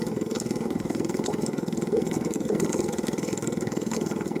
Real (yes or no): no